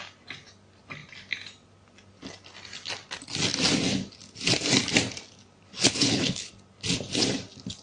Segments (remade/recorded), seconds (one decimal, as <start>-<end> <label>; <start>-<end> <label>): 0.0-5.7 recorded; 5.7-6.5 remade; 6.5-7.8 recorded